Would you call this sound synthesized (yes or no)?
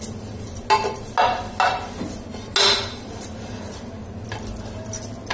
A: no